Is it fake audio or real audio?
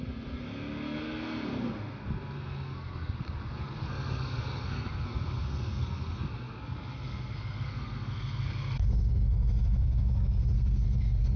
fake